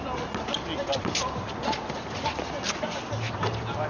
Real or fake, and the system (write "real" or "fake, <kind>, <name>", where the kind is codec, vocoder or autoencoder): real